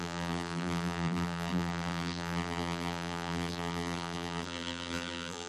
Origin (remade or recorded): remade